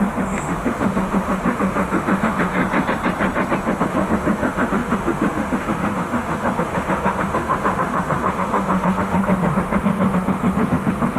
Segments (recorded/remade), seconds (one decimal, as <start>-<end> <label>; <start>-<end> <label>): 0.0-2.6 remade; 2.6-3.8 recorded; 3.8-11.2 remade